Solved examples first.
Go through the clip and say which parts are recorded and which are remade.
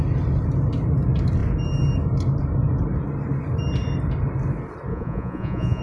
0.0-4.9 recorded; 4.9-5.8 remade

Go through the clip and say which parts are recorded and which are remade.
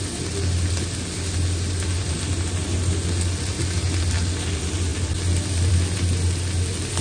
0.0-7.0 recorded